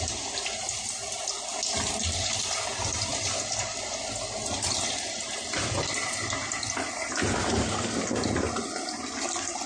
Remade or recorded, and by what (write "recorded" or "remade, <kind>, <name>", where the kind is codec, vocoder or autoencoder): recorded